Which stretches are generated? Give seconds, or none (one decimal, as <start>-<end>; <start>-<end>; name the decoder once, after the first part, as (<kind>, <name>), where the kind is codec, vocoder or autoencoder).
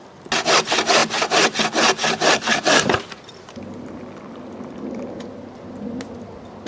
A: 1.0-1.6 (vocoder, BigVGAN v2); 2.0-4.1